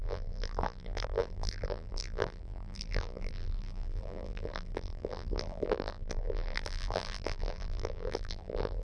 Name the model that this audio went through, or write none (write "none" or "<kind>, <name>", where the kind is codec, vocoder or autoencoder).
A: vocoder, BigVGAN v2